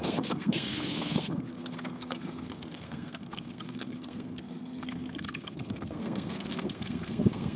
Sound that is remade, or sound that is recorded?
remade